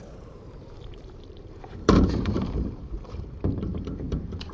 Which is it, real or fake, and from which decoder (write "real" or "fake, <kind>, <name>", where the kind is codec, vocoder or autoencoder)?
fake, vocoder, BigVGAN v2